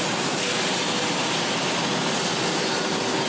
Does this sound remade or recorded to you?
recorded